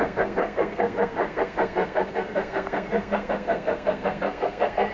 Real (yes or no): no